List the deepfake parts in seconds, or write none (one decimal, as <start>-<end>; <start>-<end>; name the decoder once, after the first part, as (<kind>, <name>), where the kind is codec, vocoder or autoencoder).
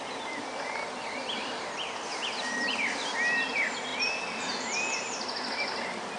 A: none